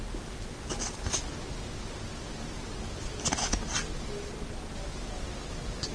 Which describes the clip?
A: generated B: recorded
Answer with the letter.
B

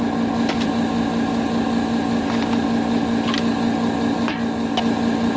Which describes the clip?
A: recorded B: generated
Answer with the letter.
A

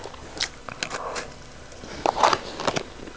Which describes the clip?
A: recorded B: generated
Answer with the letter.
A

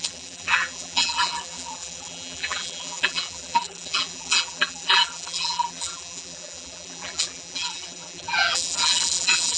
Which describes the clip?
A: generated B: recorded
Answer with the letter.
A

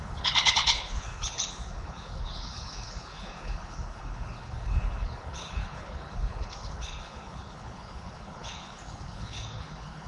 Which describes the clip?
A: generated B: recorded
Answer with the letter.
A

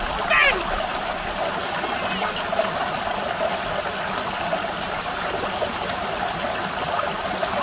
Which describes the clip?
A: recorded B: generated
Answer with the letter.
A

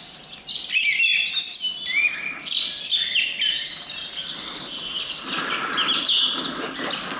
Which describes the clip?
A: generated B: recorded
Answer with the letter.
B